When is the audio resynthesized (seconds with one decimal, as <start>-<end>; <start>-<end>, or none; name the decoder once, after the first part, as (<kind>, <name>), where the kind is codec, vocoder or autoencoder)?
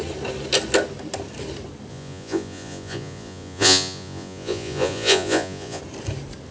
1.9-5.8 (vocoder, Vocos)